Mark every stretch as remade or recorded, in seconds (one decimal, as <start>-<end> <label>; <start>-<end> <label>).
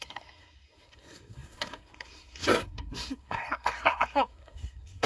0.0-5.1 remade